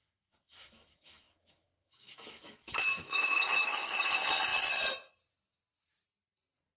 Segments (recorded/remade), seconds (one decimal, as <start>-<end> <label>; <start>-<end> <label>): 0.0-4.1 remade; 4.1-6.8 recorded